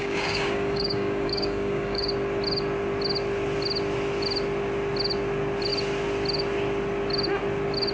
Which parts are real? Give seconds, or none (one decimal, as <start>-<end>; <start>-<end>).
2.1-7.9